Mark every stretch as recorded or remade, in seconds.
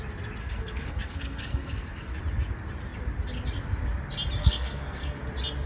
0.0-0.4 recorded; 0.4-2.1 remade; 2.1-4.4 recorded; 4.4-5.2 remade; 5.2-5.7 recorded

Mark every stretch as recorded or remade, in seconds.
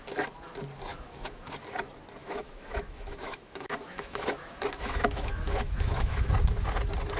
0.0-0.9 recorded; 0.9-1.5 remade; 1.5-2.2 recorded; 2.2-6.3 remade; 6.3-7.2 recorded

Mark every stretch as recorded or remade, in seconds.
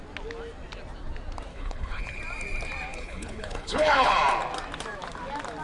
0.0-1.5 recorded; 1.5-2.2 remade; 2.2-2.9 recorded; 2.9-4.1 remade; 4.1-5.6 recorded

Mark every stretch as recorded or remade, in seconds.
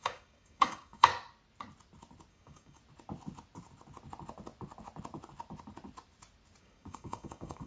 0.0-1.1 remade; 1.1-2.3 recorded; 2.3-2.8 remade; 2.8-6.6 recorded; 6.6-7.7 remade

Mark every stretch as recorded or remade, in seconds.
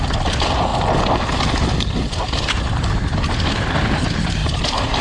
0.0-5.0 recorded